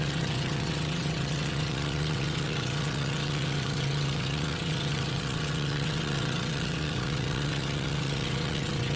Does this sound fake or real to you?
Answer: fake